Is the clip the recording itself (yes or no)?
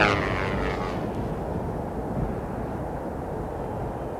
yes